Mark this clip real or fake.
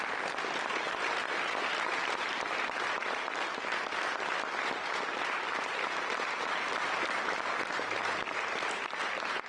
real